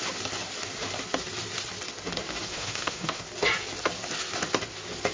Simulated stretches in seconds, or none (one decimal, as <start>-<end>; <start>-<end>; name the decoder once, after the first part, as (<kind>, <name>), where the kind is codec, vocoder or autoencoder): 2.5-3.2 (autoencoder, DAC-VAE)